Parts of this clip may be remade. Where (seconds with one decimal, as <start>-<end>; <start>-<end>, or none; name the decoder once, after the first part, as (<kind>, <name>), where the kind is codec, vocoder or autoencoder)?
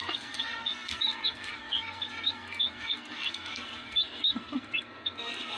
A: 0.0-5.6 (codec, SNAC)